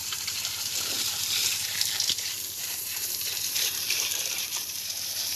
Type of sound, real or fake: fake